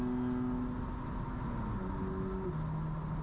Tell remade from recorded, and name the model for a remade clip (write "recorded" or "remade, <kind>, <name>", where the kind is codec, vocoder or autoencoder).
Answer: recorded